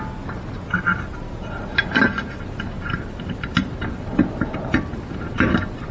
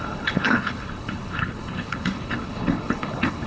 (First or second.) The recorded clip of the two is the first